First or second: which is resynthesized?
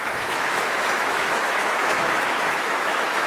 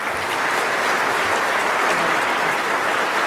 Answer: first